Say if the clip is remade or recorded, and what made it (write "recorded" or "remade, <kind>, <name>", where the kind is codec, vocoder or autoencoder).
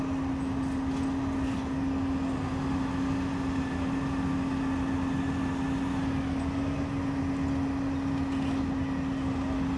recorded